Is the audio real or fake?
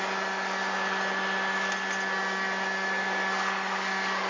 real